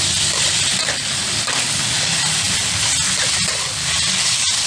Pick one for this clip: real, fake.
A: real